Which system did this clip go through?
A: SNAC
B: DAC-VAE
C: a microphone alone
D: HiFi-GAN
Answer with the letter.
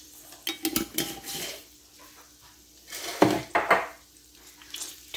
C